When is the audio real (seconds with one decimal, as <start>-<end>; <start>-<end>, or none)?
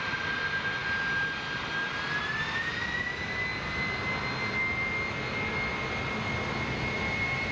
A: 0.0-7.5